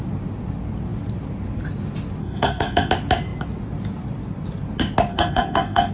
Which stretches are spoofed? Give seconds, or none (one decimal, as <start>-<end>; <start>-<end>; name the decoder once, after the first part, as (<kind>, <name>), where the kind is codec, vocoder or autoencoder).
2.2-2.9 (codec, SNAC); 5.1-5.9